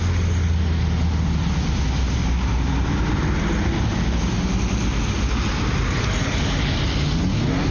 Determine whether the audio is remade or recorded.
recorded